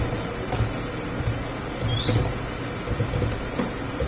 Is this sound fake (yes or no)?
no